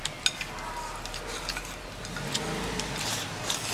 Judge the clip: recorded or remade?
recorded